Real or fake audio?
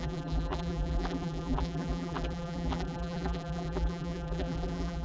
fake